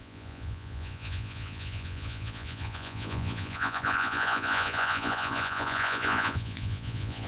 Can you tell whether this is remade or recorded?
remade